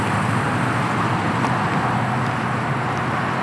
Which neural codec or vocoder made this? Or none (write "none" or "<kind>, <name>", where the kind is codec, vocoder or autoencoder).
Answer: none